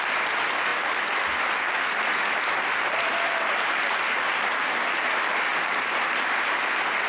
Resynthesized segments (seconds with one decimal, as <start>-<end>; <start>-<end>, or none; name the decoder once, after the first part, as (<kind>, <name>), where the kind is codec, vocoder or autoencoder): none